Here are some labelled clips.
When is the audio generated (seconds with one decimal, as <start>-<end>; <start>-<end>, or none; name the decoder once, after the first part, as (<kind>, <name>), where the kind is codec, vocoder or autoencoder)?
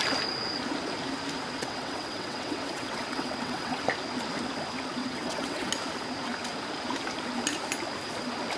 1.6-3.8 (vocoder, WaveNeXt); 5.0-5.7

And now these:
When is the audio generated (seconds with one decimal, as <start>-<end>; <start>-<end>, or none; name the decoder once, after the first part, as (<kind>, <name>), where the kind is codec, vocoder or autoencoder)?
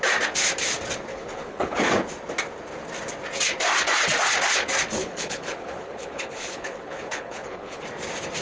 1.1-1.9 (codec, HILCodec); 5.0-7.8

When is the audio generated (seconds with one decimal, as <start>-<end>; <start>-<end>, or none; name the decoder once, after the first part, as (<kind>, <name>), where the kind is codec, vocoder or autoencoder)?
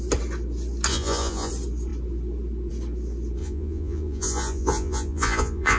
0.9-1.5 (vocoder, Vocos); 3.4-5.8